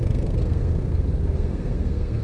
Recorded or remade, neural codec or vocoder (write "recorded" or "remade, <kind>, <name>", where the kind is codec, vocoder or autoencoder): remade, codec, SNAC